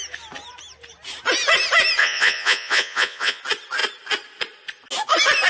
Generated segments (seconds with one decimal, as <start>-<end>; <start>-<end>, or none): 2.0-3.4